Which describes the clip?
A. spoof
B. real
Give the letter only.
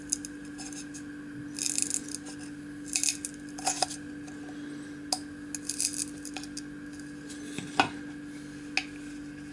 B